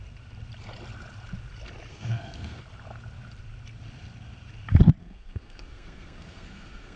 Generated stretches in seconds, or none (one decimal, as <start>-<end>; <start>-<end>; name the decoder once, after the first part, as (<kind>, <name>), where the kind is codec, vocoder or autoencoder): 1.9-2.6 (codec, SNAC); 5.0-7.0